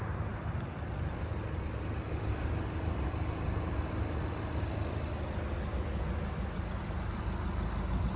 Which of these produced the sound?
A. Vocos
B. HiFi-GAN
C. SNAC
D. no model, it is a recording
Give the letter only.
D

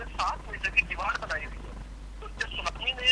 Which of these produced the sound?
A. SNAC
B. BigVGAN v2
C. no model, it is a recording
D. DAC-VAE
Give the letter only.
C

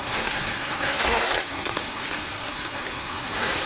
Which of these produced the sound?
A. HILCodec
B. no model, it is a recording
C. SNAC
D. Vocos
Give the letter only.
C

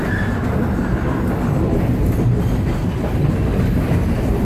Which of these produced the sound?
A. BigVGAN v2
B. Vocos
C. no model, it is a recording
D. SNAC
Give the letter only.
C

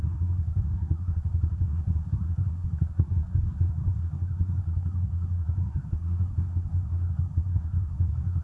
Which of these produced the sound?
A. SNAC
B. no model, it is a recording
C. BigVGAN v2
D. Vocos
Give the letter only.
A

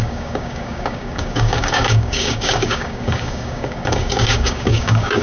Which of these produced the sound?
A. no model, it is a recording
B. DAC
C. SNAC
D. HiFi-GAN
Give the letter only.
B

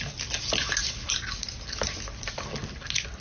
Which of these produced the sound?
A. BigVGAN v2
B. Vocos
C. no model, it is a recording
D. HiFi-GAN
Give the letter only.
C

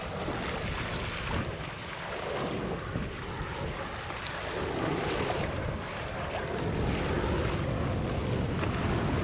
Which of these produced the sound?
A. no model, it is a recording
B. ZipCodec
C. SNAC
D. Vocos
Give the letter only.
A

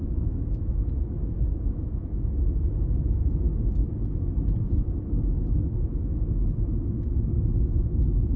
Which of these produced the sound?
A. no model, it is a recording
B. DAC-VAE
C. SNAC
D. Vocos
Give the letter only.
B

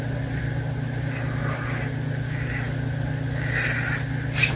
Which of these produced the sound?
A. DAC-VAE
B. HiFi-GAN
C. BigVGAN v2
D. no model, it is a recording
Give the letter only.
D